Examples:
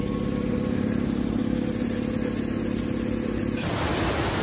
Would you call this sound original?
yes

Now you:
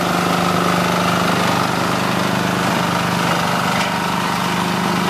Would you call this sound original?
yes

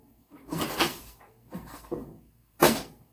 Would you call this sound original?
no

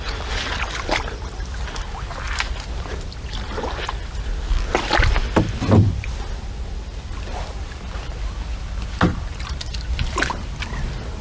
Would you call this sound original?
yes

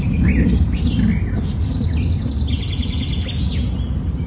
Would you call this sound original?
yes